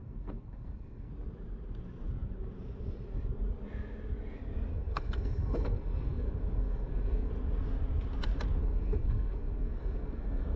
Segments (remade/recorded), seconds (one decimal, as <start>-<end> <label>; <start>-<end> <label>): 0.0-1.1 remade; 1.1-4.7 recorded; 4.7-7.3 remade; 7.3-8.6 recorded; 8.6-10.6 remade